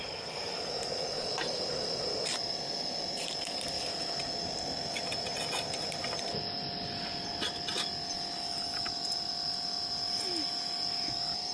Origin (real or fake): real